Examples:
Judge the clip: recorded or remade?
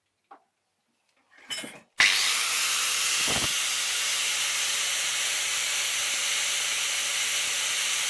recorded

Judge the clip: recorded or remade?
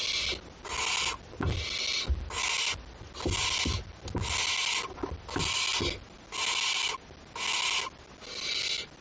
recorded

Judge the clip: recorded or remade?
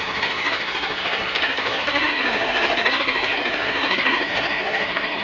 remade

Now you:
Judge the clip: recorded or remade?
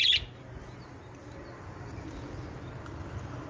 recorded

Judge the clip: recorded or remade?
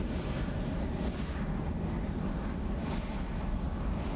recorded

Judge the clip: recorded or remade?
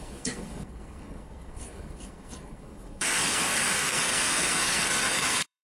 remade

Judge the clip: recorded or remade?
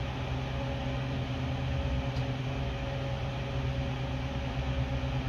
recorded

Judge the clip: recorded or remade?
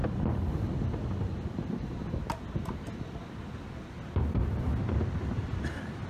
recorded